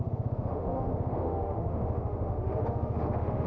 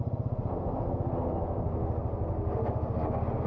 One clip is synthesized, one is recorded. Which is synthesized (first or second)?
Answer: first